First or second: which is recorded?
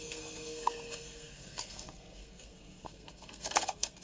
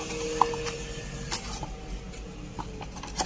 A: second